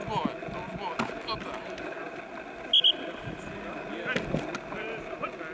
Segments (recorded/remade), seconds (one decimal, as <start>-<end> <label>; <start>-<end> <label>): 0.0-5.5 recorded